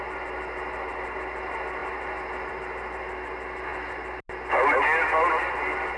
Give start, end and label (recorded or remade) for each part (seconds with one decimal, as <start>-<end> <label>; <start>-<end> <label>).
0.0-6.0 recorded